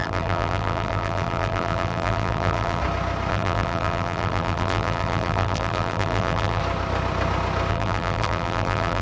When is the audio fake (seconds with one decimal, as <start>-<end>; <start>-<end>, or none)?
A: 0.0-2.8; 3.3-6.6; 7.7-9.0